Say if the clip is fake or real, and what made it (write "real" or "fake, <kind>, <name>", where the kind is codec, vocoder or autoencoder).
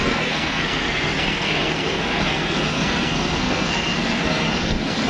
fake, codec, SNAC